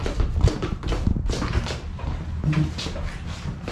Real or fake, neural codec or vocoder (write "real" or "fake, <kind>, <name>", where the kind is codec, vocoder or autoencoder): real